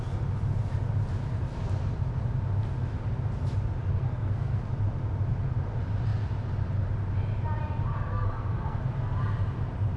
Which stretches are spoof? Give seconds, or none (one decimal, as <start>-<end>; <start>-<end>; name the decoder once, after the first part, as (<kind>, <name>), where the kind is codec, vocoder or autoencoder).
3.9-4.6 (codec, SNAC); 7.9-8.8